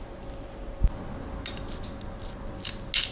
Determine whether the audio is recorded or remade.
recorded